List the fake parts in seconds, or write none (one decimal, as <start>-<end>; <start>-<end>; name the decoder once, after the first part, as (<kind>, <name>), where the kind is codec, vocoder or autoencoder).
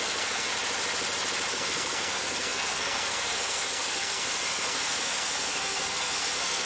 0.0-0.5 (codec, SNAC); 1.5-6.7